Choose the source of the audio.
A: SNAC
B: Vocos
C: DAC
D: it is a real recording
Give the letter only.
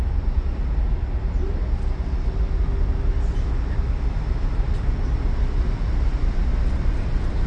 D